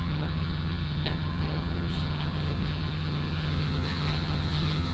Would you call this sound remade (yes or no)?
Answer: yes